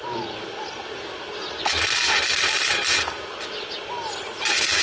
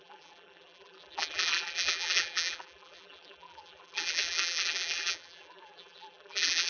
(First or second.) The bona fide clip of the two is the first